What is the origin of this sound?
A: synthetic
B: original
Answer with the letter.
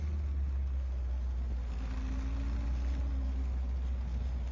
B